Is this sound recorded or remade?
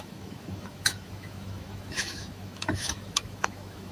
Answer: remade